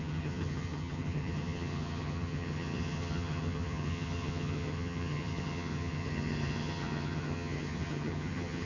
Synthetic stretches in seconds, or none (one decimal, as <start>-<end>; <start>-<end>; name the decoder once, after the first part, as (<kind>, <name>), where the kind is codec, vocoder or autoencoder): 0.0-8.7 (vocoder, HiFi-GAN)